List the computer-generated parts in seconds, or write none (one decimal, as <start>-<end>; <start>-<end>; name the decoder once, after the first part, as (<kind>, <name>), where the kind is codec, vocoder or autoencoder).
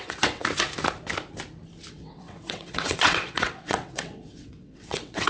0.0-0.4 (vocoder, WaveNeXt); 1.9-5.3